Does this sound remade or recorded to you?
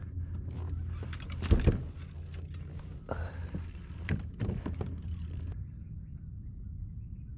recorded